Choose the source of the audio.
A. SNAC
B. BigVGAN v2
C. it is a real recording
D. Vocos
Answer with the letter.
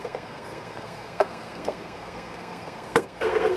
A